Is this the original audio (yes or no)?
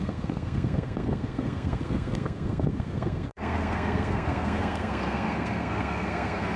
no